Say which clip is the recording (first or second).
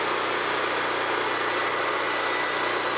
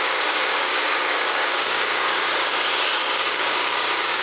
first